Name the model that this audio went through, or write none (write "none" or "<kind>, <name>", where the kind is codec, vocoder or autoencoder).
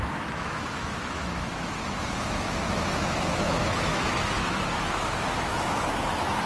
autoencoder, DAC-VAE